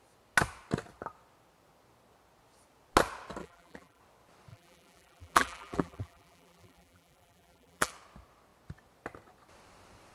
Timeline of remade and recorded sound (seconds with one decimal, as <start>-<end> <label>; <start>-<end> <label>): 0.0-3.4 recorded; 3.4-4.0 remade; 4.0-4.5 recorded; 4.5-7.9 remade; 7.9-10.1 recorded